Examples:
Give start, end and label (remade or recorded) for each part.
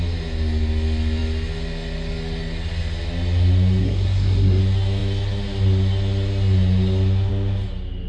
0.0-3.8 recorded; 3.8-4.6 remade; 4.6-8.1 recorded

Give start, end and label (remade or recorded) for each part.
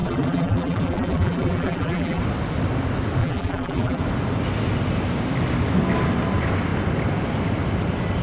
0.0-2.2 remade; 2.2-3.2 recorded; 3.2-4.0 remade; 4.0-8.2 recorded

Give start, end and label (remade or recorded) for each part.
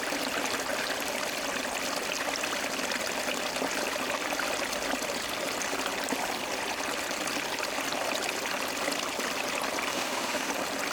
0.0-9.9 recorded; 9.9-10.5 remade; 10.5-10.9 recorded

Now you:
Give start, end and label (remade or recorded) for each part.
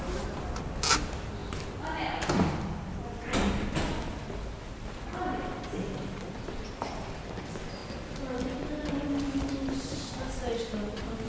0.0-11.3 recorded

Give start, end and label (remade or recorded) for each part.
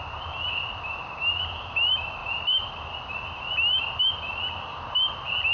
0.0-2.2 recorded; 2.2-2.7 remade; 2.7-5.5 recorded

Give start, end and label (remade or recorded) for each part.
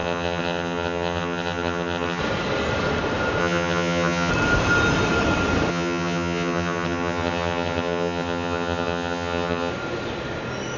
0.0-2.2 remade; 2.2-3.4 recorded; 3.4-4.3 remade; 4.3-5.7 recorded; 5.7-9.7 remade; 9.7-10.8 recorded